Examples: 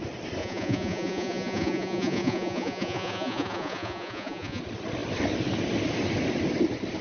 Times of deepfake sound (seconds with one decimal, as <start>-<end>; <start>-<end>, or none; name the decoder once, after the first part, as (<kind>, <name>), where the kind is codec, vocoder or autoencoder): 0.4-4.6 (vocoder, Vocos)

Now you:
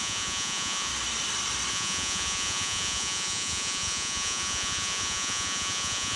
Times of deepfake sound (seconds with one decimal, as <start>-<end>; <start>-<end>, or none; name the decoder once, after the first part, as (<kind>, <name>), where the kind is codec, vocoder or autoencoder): 0.0-0.9 (vocoder, Vocos); 1.7-6.2

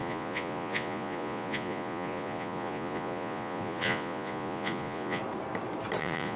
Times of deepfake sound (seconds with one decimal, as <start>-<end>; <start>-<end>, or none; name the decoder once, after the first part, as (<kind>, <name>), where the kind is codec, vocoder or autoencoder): 0.0-5.2 (vocoder, Vocos); 6.0-6.4

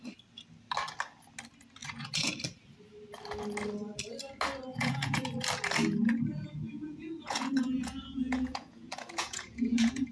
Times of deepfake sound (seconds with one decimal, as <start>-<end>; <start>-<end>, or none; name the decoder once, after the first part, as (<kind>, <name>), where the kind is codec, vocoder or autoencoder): 1.8-2.3 (vocoder, Vocos); 4.7-5.2; 6.3-10.1